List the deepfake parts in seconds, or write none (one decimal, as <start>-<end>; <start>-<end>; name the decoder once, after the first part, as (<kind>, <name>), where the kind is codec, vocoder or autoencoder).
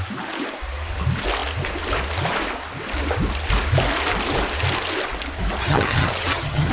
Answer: 5.6-6.7 (vocoder, HiFi-GAN)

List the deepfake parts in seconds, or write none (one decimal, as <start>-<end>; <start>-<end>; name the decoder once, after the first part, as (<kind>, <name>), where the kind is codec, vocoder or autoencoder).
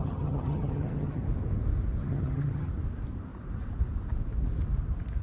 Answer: 0.0-1.2 (vocoder, HiFi-GAN); 2.0-2.7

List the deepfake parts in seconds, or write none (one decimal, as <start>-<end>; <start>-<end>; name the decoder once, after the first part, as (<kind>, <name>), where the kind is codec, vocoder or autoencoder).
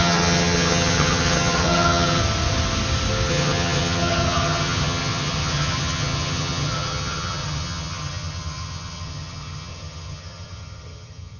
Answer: 0.0-2.2 (vocoder, HiFi-GAN); 3.3-11.4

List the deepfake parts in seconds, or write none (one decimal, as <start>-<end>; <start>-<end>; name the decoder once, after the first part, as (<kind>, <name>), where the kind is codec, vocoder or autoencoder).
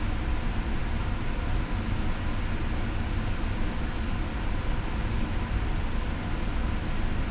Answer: none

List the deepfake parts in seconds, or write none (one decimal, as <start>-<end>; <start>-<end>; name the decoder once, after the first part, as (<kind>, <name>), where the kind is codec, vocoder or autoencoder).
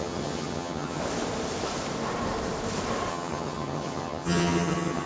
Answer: 0.0-1.0 (vocoder, HiFi-GAN); 3.1-5.1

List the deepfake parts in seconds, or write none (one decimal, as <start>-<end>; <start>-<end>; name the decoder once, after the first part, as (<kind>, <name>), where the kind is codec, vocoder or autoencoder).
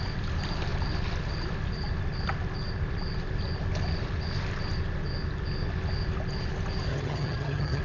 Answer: 6.9-7.8 (vocoder, HiFi-GAN)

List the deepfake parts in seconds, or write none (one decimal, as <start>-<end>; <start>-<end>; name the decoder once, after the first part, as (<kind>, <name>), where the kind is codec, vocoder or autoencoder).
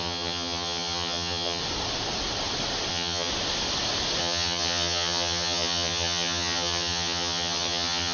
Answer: 0.0-1.6 (vocoder, HiFi-GAN); 2.9-3.3; 4.2-8.1